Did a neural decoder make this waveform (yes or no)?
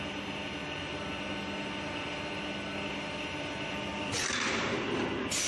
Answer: no